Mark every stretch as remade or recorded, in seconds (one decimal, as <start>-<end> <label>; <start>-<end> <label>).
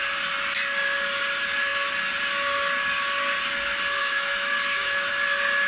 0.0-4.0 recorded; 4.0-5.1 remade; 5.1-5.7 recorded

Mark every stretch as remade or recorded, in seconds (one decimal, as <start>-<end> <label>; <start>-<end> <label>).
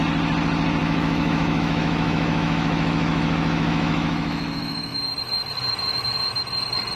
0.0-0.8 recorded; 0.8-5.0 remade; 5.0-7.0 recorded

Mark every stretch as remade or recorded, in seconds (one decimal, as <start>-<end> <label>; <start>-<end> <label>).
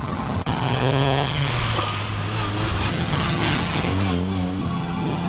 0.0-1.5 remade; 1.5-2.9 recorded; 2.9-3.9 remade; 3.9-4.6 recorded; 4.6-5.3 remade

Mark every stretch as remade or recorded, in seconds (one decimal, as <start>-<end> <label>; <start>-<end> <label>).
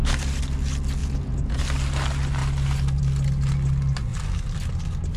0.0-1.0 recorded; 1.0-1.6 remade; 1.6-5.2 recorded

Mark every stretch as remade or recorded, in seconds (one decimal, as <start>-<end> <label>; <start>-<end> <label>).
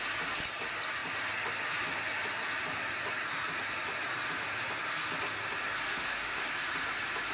0.0-5.9 recorded; 5.9-6.5 remade; 6.5-7.3 recorded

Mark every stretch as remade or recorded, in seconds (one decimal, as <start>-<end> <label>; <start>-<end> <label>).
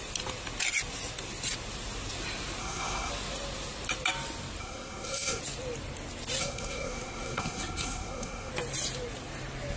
0.0-2.6 recorded; 2.6-3.1 remade; 3.1-4.6 recorded; 4.6-5.4 remade; 5.4-6.4 recorded; 6.4-8.5 remade; 8.5-9.8 recorded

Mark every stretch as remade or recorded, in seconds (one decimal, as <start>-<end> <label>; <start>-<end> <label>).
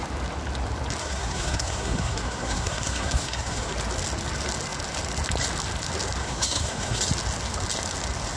0.0-1.0 recorded; 1.0-3.7 remade; 3.7-6.2 recorded; 6.2-7.0 remade; 7.0-8.4 recorded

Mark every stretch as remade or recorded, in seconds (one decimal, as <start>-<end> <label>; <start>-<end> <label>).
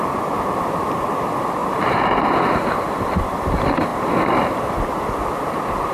0.0-5.9 recorded